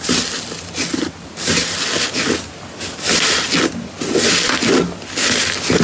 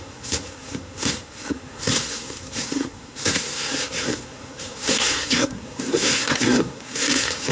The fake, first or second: second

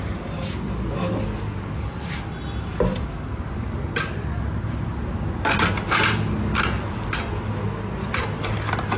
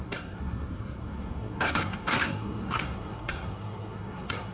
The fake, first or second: second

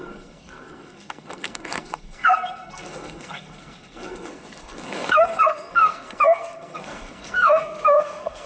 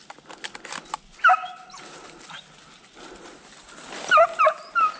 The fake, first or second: first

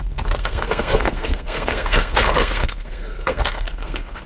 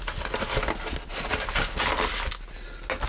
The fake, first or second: first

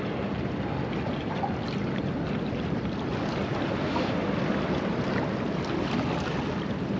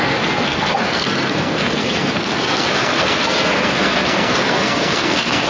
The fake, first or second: second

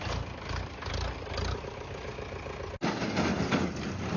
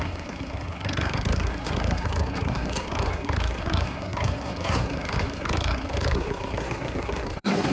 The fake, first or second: second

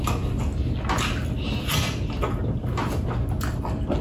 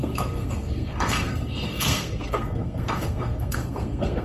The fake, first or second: second